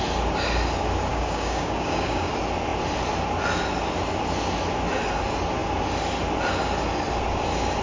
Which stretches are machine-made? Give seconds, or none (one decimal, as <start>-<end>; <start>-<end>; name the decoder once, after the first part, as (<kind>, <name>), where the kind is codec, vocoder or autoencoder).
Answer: 1.1-2.3 (codec, DAC)